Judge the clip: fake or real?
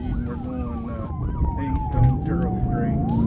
real